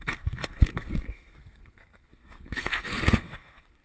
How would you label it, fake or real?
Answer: fake